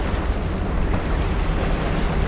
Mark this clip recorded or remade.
recorded